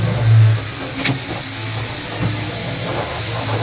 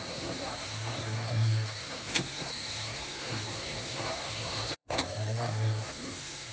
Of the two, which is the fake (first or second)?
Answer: second